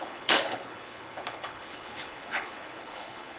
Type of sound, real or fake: fake